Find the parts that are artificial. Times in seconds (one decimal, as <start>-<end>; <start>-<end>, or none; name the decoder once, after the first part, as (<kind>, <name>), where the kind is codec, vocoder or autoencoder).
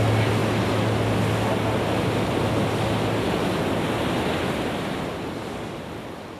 none